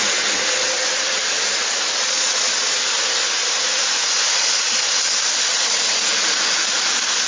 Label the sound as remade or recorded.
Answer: recorded